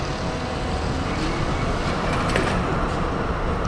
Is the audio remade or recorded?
recorded